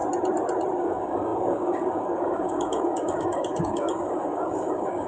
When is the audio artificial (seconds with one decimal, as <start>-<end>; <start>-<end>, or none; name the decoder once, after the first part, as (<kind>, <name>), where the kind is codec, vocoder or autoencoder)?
0.8-5.1 (codec, DAC)